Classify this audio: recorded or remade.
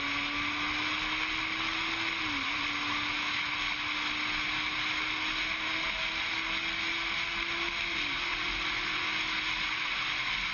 recorded